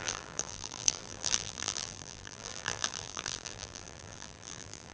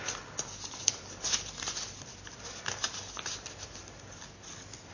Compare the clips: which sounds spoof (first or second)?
first